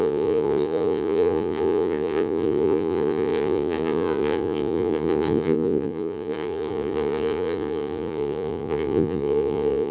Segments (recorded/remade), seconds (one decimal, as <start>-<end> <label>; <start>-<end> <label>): 0.0-9.9 remade